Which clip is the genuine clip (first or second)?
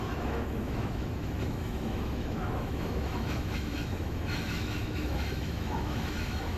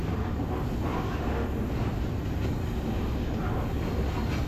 second